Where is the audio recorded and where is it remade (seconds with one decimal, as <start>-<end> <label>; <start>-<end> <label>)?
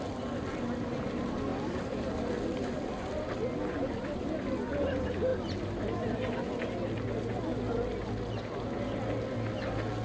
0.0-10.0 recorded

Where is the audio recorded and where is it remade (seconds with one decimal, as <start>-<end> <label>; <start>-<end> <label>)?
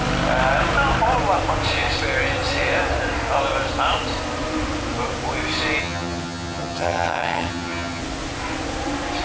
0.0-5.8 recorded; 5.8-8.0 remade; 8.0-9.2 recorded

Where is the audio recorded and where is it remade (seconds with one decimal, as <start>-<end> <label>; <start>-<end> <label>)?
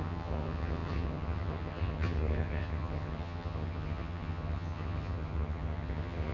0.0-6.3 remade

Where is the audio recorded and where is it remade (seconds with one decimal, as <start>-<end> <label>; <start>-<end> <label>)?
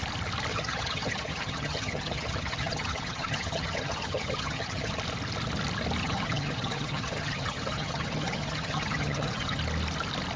0.0-0.5 recorded; 0.5-4.9 remade; 4.9-6.0 recorded; 6.0-9.6 remade; 9.6-10.4 recorded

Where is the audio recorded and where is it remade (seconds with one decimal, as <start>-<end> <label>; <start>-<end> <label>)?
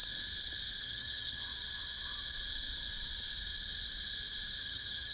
0.0-0.8 recorded; 0.8-1.5 remade; 1.5-4.6 recorded; 4.6-5.1 remade